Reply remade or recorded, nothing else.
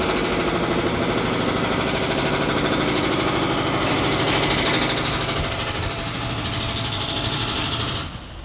recorded